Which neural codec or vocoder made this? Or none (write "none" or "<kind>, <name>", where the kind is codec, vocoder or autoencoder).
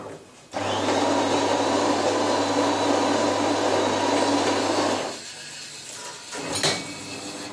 none